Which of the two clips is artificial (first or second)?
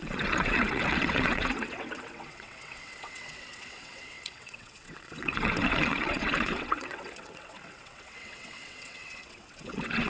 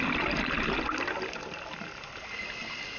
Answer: first